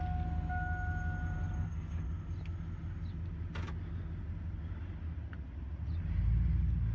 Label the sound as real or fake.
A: real